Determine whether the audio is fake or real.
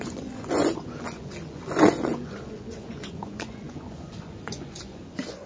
fake